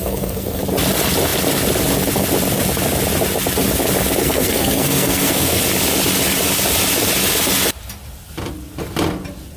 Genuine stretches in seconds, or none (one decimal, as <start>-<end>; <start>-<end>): 0.6-4.2; 5.6-9.6